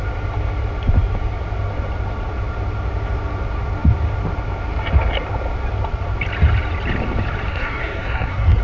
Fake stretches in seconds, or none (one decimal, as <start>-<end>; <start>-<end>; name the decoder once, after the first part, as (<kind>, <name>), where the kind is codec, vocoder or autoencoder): 7.5-8.6 (codec, SNAC)